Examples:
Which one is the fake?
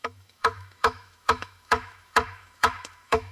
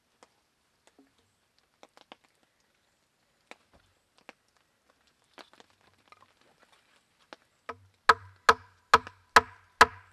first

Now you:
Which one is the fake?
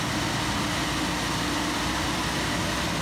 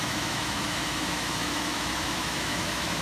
second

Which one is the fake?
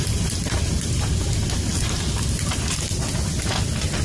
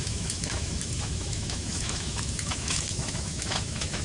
second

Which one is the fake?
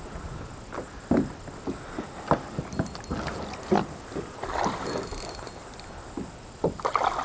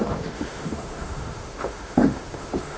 second